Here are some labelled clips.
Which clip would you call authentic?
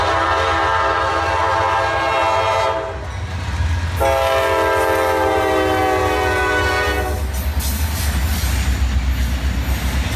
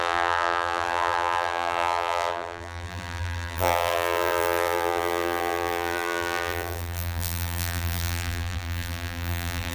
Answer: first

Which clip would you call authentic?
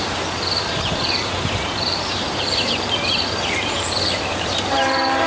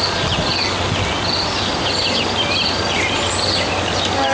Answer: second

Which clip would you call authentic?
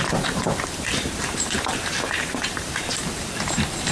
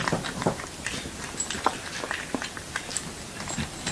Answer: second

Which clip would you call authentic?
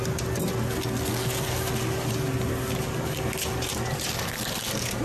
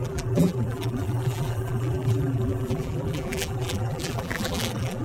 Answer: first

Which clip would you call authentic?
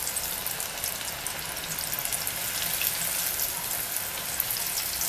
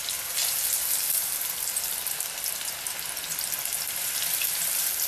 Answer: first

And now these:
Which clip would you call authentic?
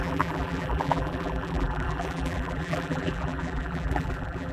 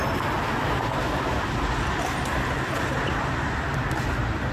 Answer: second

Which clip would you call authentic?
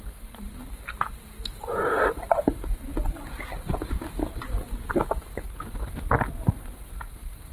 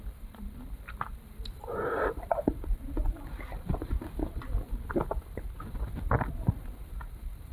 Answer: first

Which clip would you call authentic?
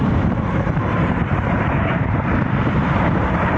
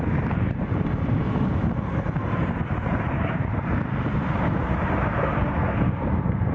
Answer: second